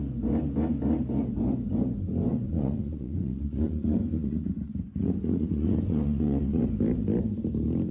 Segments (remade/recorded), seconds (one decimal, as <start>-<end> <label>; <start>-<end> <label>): 0.0-2.3 recorded; 2.3-6.6 remade; 6.6-7.9 recorded